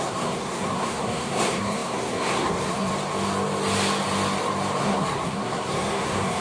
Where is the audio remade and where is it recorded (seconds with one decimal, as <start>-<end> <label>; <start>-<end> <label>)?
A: 0.0-2.9 remade; 2.9-4.8 recorded; 4.8-6.4 remade